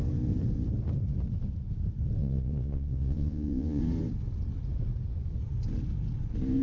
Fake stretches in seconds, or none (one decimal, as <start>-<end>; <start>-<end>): 2.2-3.8